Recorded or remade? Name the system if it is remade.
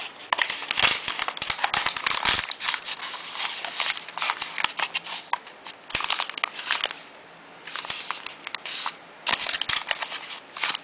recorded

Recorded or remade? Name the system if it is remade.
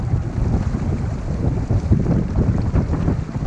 recorded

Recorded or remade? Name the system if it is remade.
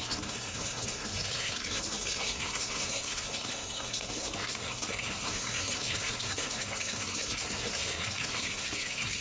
remade, codec, SNAC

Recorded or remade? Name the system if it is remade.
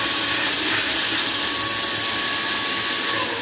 recorded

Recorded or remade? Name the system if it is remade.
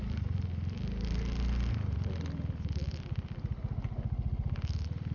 recorded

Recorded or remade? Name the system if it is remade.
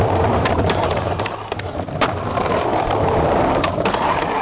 remade, vocoder, BigVGAN v2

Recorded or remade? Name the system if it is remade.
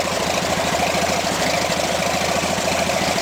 recorded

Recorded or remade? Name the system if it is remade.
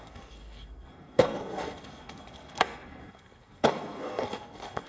remade, codec, SNAC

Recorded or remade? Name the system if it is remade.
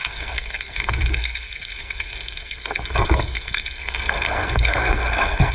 remade, codec, SNAC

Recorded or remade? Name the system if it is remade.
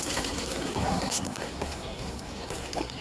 remade, codec, SNAC